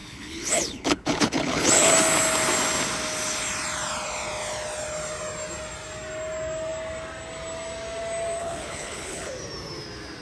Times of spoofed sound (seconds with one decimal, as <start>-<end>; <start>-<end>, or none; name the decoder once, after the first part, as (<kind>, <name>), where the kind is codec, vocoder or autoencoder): 0.0-1.9 (codec, HILCodec); 8.4-9.3